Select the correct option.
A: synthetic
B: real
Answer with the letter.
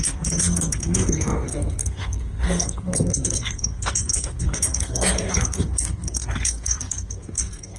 A